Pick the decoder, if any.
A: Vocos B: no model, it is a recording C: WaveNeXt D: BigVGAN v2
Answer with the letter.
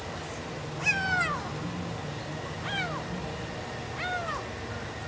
B